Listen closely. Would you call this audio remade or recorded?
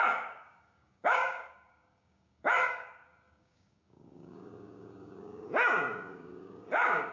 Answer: remade